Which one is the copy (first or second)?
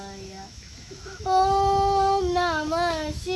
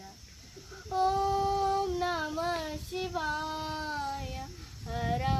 first